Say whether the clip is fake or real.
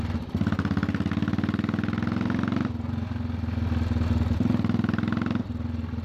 real